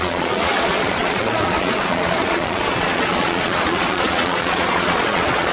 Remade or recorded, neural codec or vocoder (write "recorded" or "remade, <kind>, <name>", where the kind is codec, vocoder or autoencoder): remade, vocoder, Vocos